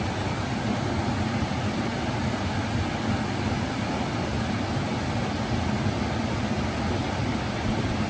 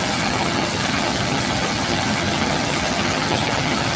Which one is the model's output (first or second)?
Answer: second